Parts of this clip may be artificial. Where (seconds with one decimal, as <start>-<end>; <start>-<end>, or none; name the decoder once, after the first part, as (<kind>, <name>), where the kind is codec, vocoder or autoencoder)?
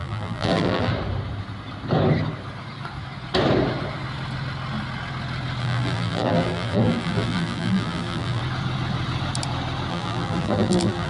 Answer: 0.0-0.9 (vocoder, BigVGAN v2); 5.6-8.4; 9.9-11.1